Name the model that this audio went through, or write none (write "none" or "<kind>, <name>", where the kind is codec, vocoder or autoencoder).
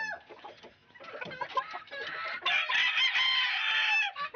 none